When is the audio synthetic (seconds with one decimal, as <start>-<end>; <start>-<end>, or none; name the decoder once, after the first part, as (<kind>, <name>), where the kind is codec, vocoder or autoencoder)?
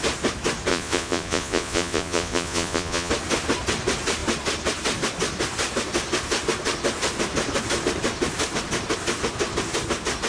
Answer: 0.7-3.1 (vocoder, Vocos)